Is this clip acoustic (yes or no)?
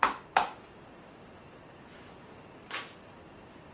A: yes